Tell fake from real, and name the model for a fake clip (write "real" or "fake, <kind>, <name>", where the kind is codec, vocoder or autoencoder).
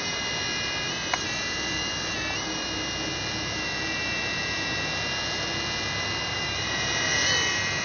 real